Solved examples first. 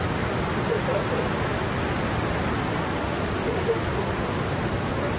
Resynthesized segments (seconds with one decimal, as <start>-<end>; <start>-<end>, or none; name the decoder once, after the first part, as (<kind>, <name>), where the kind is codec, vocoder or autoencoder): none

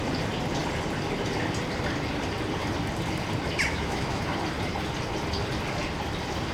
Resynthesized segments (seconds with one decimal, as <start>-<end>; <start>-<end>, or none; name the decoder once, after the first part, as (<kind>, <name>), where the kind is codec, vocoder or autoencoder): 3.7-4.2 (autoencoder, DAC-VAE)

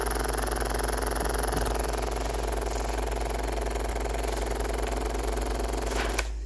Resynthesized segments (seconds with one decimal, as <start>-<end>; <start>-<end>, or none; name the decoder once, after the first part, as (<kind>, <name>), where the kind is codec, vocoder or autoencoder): none